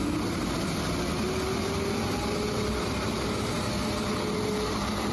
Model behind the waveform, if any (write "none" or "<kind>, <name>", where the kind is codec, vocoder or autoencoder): none